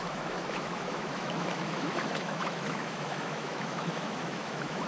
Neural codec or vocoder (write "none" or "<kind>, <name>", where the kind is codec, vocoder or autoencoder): autoencoder, DAC-VAE